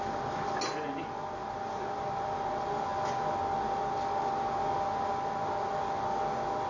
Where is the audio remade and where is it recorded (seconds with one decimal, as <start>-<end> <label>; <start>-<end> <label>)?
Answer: 0.0-6.7 recorded